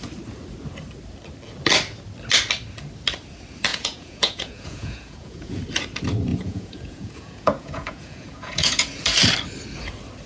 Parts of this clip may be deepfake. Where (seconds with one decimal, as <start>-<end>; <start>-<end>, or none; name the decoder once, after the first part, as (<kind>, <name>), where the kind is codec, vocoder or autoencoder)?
3.7-5.6 (vocoder, Vocos); 6.3-8.9